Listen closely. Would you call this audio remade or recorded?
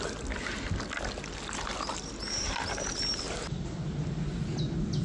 recorded